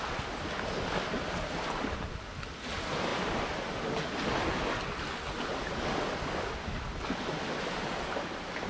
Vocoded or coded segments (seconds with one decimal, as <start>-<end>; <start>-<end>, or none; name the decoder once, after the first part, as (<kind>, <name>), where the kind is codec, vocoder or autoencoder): none